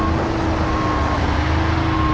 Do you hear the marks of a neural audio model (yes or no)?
no